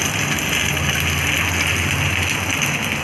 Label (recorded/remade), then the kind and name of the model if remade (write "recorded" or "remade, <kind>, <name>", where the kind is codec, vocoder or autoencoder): recorded